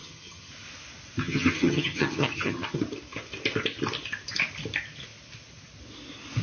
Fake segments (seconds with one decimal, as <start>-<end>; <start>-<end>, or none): 0.0-0.5; 1.2-2.8